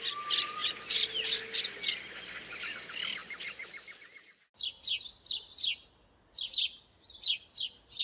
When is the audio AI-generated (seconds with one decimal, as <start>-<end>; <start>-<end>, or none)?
0.6-1.2